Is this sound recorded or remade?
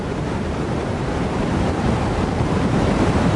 remade